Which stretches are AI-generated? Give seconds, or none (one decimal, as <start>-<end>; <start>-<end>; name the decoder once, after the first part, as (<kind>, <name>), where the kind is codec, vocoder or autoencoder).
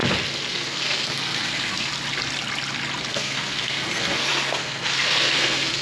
0.5-1.9 (codec, SNAC); 3.1-5.8